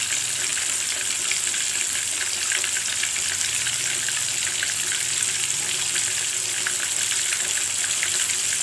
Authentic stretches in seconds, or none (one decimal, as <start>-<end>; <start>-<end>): 0.0-0.5; 4.5-8.6